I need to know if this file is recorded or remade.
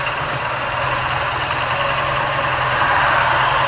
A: recorded